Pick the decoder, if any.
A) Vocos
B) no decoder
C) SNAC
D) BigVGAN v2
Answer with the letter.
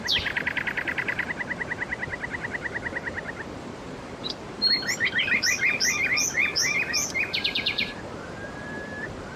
D